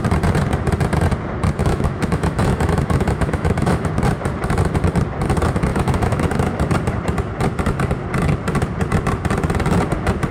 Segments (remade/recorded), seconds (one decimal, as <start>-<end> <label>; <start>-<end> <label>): 0.0-1.6 recorded; 1.6-3.9 remade; 3.9-5.7 recorded; 5.7-6.4 remade; 6.4-10.3 recorded